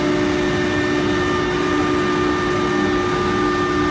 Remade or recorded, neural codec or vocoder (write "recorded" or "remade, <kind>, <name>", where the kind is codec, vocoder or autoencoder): recorded